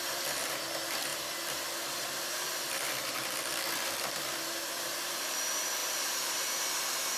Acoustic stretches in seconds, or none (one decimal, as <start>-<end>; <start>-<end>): 0.0-1.1; 5.3-5.8; 6.3-7.2